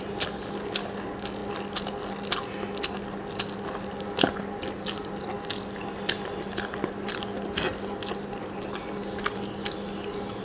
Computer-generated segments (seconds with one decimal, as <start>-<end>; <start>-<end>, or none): none